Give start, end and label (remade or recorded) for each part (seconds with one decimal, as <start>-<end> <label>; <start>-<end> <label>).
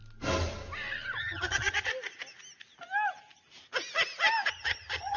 0.0-1.2 recorded; 1.2-1.9 remade; 1.9-4.5 recorded; 4.5-5.2 remade